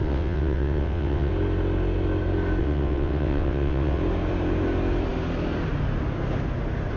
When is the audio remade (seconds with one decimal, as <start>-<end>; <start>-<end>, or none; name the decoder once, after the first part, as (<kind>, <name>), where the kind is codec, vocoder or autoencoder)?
0.0-1.3 (vocoder, WaveNeXt); 2.6-4.0